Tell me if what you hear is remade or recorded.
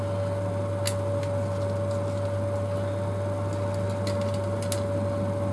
recorded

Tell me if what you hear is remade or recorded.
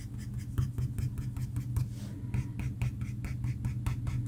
recorded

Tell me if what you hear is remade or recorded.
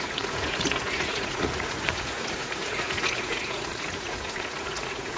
remade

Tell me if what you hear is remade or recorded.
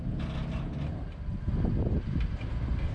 recorded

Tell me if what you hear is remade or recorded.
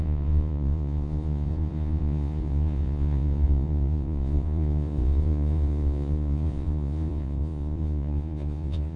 remade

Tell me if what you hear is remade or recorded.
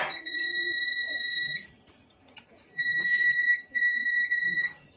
remade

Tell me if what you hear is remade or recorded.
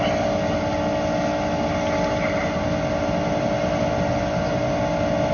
recorded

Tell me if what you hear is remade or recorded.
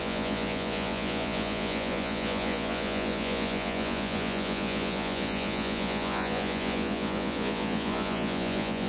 remade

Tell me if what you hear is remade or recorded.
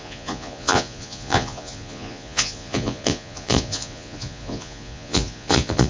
remade